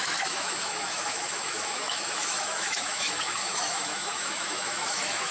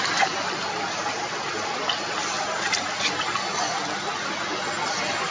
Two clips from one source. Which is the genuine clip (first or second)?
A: second